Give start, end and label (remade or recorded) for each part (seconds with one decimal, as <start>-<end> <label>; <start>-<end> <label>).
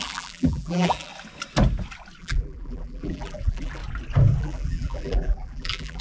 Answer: 0.0-1.1 remade; 1.1-2.2 recorded; 2.2-3.8 remade; 3.8-4.4 recorded; 4.4-6.0 remade